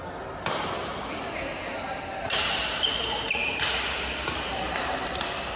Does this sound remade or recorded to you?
recorded